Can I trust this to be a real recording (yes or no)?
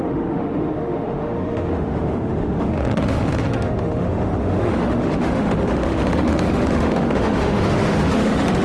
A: no